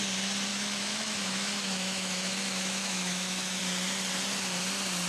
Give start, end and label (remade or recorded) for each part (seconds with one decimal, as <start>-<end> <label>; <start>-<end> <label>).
0.0-0.5 recorded; 0.5-3.6 remade; 3.6-5.1 recorded